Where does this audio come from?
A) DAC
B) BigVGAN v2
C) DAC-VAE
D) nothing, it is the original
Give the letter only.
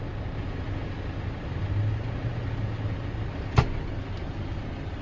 D